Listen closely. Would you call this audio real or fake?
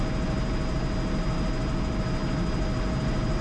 real